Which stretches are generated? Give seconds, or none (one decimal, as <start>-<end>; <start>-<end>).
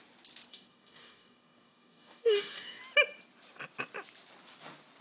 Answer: 0.5-2.8